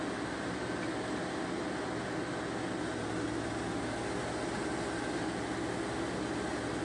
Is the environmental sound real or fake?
real